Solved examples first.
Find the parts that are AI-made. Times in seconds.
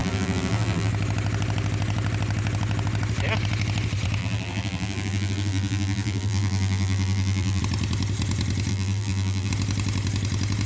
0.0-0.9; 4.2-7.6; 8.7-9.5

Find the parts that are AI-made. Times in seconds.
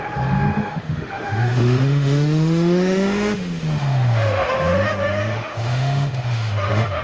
0.0-7.0